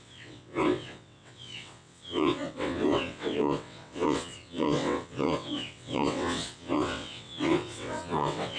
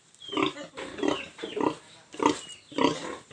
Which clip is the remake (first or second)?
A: first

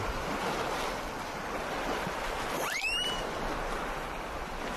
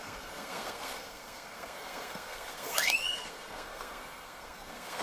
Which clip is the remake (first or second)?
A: second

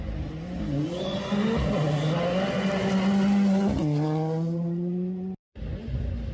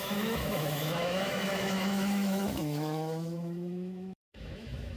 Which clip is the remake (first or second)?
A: second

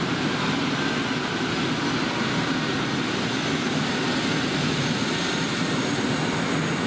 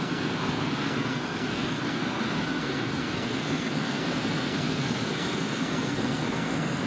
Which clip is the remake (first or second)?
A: second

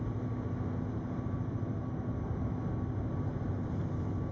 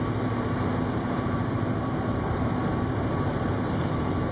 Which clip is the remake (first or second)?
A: second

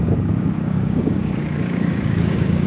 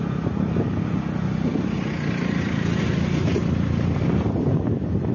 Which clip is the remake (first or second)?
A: first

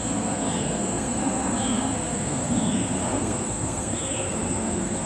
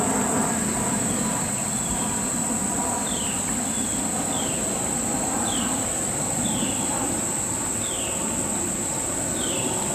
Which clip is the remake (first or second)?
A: first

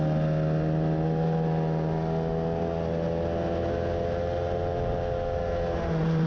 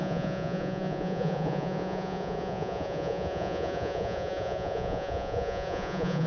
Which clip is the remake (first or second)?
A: second